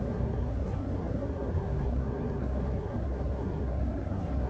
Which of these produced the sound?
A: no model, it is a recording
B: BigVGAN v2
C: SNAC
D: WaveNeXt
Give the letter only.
C